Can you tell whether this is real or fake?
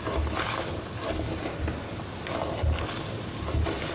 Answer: real